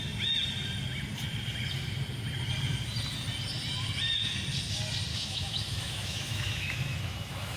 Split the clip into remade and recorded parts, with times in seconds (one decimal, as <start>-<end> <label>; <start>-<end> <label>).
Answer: 0.0-5.1 recorded; 5.1-7.6 remade